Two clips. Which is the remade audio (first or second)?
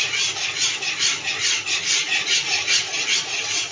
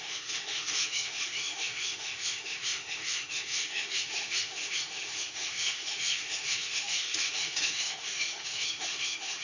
second